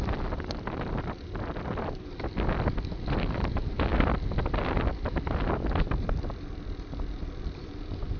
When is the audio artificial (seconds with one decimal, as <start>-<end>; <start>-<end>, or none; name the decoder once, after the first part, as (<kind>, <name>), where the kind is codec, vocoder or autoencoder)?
none